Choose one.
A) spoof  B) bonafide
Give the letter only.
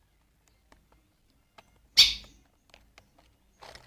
B